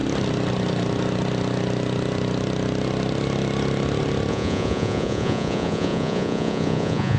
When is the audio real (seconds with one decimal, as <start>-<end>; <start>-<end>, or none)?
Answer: 0.0-4.3